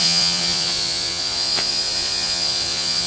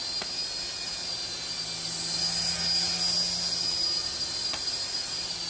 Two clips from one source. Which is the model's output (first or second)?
first